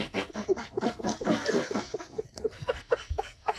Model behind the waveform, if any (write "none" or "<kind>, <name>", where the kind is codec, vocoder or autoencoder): codec, SNAC